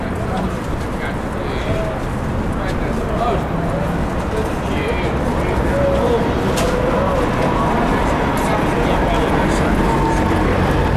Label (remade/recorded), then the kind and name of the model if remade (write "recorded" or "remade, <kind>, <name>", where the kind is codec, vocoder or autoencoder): recorded